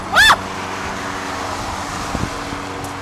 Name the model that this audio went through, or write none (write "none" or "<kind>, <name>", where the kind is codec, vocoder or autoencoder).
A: none